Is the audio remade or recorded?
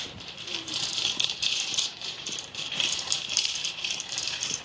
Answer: remade